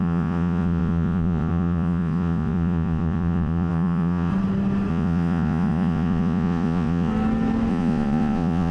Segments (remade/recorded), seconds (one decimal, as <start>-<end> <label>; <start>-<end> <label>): 0.0-4.3 remade; 4.3-4.9 recorded; 4.9-7.1 remade; 7.1-7.7 recorded; 7.7-8.7 remade